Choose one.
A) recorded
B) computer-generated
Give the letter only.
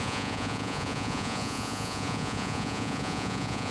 B